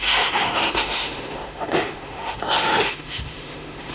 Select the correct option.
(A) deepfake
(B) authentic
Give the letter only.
A